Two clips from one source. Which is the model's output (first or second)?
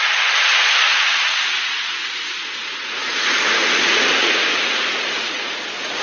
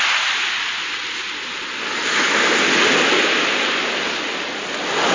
first